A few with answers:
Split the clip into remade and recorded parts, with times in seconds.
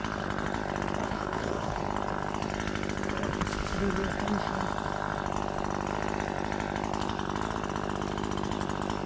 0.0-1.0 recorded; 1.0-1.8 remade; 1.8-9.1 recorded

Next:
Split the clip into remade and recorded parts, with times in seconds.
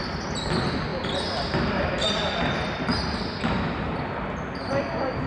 0.0-5.3 recorded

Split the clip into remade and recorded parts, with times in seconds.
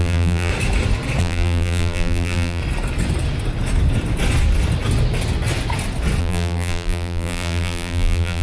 0.0-0.5 remade; 0.5-1.2 recorded; 1.2-2.6 remade; 2.6-6.2 recorded; 6.2-8.4 remade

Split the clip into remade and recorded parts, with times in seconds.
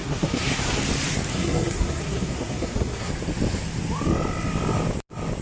0.0-0.6 remade; 0.6-1.3 recorded; 1.3-3.1 remade; 3.1-5.4 recorded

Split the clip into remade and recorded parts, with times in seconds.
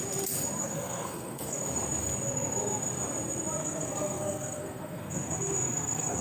0.0-0.6 recorded; 0.6-1.6 remade; 1.6-3.6 recorded; 3.6-6.2 remade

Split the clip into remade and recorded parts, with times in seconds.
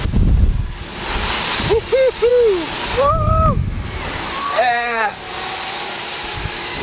0.0-4.4 recorded; 4.4-5.1 remade; 5.1-6.8 recorded